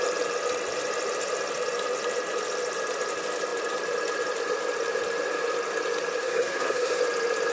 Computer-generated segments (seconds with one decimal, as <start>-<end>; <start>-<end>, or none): 6.2-7.0